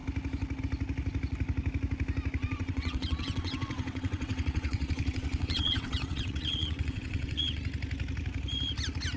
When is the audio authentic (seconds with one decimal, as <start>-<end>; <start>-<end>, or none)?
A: 0.0-2.4; 7.6-9.2